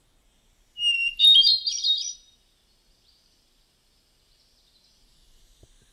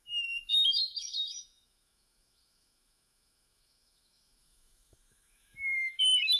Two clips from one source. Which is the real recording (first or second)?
first